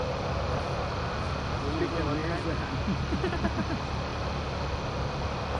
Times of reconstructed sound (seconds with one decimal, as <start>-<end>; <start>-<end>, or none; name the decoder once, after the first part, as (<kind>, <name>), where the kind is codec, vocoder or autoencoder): none